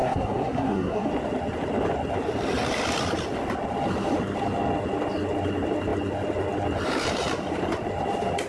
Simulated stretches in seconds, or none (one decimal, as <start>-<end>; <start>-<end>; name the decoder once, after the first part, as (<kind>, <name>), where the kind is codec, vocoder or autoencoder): 0.0-1.1 (codec, SNAC)